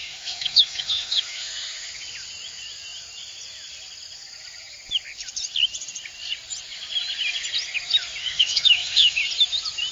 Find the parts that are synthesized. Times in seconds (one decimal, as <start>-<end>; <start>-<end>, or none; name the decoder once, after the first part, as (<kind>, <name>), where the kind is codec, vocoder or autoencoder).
0.0-1.9 (autoencoder, DAC-VAE); 8.2-9.2